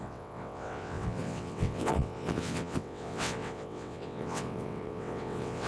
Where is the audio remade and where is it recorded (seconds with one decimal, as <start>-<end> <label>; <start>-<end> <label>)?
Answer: 0.0-5.7 remade